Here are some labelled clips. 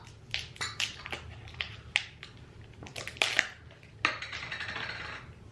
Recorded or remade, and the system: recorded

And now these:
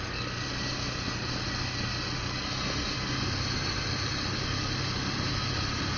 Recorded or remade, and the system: recorded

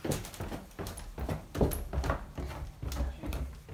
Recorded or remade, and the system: recorded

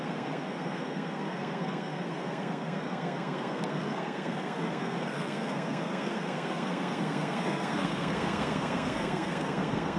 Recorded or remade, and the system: remade, codec, SNAC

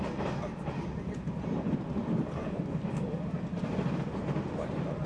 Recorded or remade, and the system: recorded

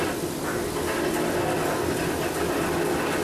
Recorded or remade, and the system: recorded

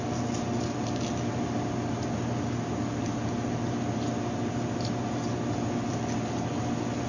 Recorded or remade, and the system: recorded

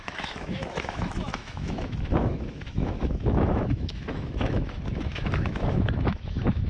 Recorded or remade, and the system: remade, autoencoder, DAC-VAE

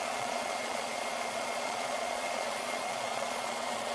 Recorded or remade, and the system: remade, vocoder, Vocos